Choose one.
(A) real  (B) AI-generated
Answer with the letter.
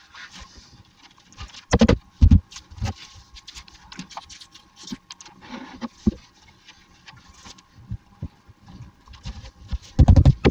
A